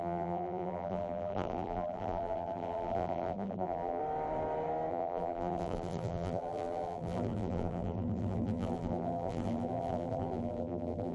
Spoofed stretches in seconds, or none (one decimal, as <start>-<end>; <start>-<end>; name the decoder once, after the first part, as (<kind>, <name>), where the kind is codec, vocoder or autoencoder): 0.0-4.0 (vocoder, BigVGAN v2); 4.9-11.1